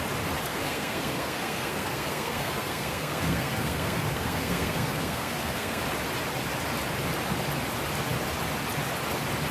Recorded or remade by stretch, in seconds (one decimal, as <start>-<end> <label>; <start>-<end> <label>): 0.0-0.5 recorded; 0.5-5.8 remade; 5.8-9.5 recorded